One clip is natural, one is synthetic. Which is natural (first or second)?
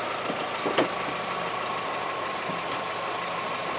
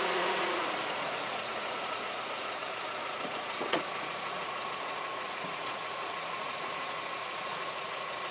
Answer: first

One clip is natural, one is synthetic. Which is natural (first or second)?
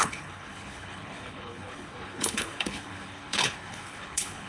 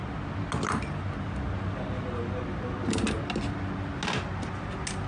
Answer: second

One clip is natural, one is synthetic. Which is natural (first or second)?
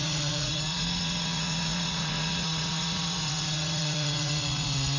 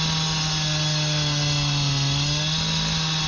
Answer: second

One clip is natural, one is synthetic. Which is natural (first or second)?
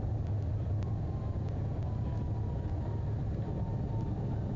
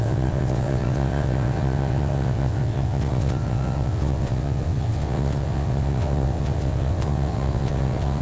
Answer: first